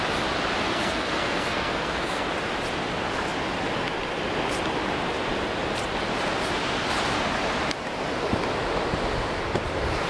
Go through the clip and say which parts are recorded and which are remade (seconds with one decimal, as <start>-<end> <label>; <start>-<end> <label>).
0.0-0.7 recorded; 0.7-2.3 remade; 2.3-10.1 recorded